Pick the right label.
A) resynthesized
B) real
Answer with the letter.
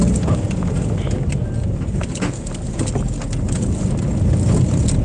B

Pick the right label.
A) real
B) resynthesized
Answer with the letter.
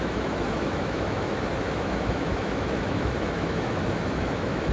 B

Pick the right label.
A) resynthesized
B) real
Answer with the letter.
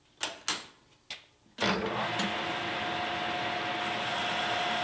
B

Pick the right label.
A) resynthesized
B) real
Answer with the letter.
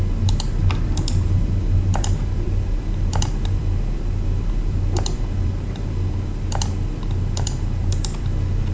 A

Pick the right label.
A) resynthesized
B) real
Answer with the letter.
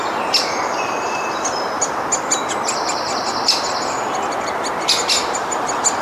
B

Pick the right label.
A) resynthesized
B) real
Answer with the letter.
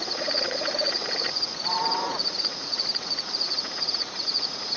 A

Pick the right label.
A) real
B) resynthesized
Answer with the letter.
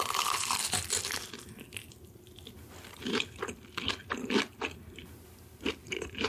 A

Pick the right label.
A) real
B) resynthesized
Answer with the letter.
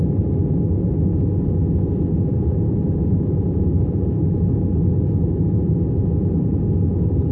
A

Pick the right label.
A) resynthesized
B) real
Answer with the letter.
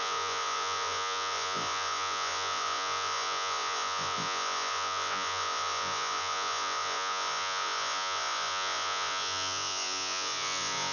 A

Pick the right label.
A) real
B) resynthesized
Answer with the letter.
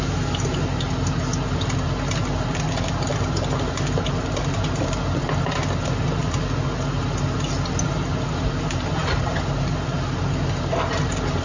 A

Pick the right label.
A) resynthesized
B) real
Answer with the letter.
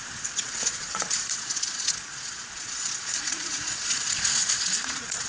A